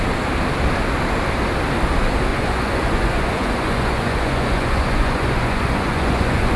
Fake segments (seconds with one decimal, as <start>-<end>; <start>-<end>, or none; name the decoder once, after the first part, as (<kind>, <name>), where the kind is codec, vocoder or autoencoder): 2.3-6.6 (vocoder, Vocos)